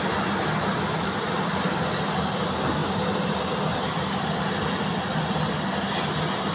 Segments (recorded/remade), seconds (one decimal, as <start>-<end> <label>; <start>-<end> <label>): 0.0-6.5 recorded